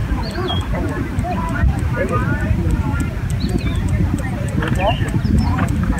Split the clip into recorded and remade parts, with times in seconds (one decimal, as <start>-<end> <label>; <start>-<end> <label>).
0.0-2.2 remade; 2.2-3.5 recorded; 3.5-6.0 remade

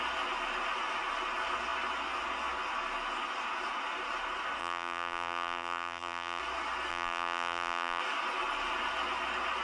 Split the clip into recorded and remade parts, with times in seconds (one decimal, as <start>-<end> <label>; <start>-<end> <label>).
0.0-4.6 recorded; 4.6-6.4 remade; 6.4-6.9 recorded; 6.9-8.0 remade; 8.0-9.6 recorded

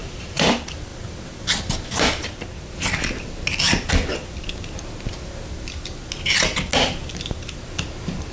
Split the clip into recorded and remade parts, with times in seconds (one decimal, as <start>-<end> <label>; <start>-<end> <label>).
0.0-0.5 remade; 0.5-8.3 recorded

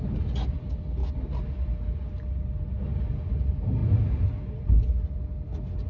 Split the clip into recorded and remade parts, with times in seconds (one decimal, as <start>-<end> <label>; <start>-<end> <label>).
0.0-5.9 recorded

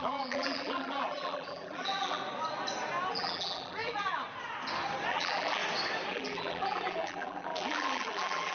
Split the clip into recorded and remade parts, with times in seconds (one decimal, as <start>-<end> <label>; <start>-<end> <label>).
0.0-2.2 remade; 2.2-3.1 recorded; 3.1-4.2 remade; 4.2-5.1 recorded; 5.1-5.6 remade; 5.6-6.1 recorded; 6.1-8.5 remade

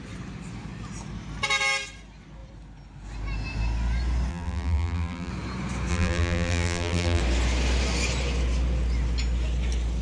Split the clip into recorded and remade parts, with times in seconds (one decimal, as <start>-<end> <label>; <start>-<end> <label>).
0.0-4.3 recorded; 4.3-5.3 remade; 5.3-5.9 recorded; 5.9-7.2 remade; 7.2-10.0 recorded

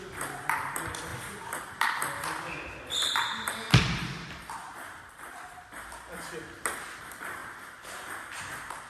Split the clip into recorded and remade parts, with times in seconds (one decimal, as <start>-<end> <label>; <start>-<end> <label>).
0.0-1.1 remade; 1.1-5.1 recorded; 5.1-7.4 remade; 7.4-8.9 recorded

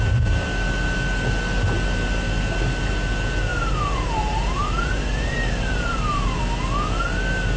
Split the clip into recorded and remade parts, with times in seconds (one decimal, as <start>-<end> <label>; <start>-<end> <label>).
0.0-3.5 recorded; 3.5-6.4 remade; 6.4-7.6 recorded